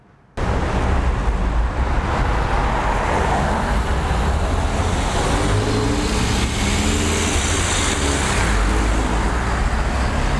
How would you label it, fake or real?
real